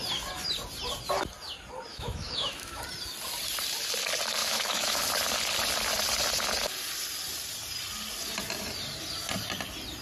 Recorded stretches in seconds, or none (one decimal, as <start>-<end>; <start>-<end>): 0.0-1.9; 2.8-4.4; 5.0-10.0